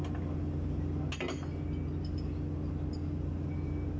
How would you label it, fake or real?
real